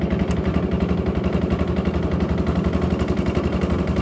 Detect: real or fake real